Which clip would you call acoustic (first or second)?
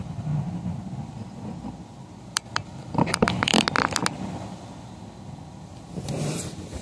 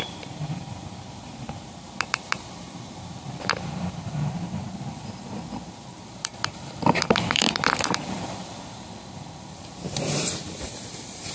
first